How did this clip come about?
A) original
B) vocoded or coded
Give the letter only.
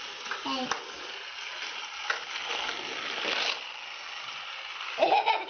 A